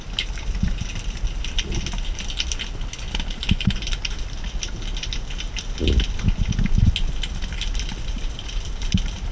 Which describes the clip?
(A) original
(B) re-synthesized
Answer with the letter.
A